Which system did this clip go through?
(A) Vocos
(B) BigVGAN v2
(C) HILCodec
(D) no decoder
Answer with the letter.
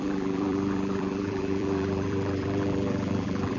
B